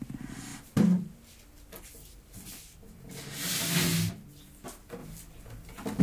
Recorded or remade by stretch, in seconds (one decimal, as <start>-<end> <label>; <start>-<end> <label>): 0.0-6.0 recorded

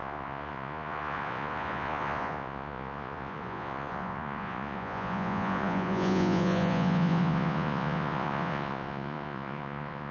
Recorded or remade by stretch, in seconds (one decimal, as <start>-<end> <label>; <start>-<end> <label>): 0.0-10.1 remade

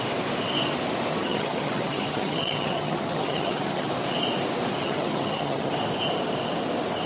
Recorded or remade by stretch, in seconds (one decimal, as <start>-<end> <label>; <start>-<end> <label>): 0.0-1.1 recorded; 1.1-3.9 remade; 3.9-4.8 recorded; 4.8-5.7 remade; 5.7-7.1 recorded

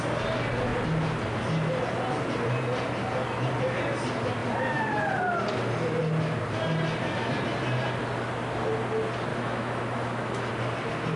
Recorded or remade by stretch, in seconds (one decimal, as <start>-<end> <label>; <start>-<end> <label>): 0.0-9.3 recorded; 9.3-10.5 remade; 10.5-11.2 recorded

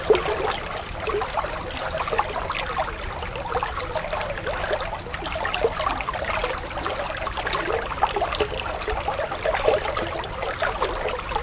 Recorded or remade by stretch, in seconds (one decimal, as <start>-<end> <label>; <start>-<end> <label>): 0.0-11.4 recorded

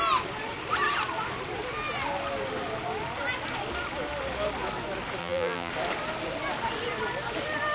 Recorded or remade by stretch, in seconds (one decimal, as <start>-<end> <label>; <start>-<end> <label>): 0.0-5.2 recorded; 5.2-5.7 remade; 5.7-7.7 recorded

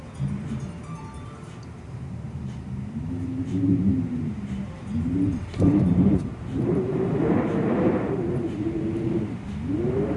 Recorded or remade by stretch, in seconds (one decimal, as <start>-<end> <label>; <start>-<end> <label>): 0.0-0.8 recorded; 0.8-3.1 remade; 3.1-3.7 recorded; 3.7-8.8 remade; 8.8-10.2 recorded